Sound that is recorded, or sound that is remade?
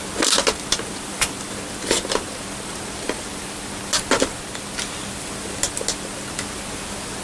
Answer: recorded